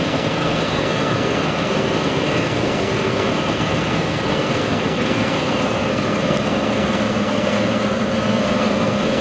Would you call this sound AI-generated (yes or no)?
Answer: yes